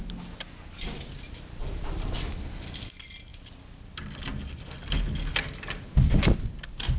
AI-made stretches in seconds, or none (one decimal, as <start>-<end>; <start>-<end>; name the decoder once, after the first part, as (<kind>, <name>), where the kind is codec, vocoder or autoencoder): none